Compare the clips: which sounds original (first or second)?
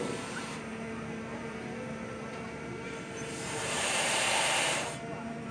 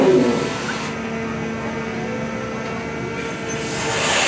second